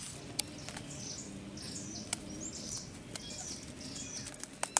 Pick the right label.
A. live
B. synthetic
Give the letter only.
A